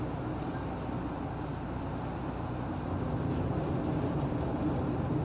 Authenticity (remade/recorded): recorded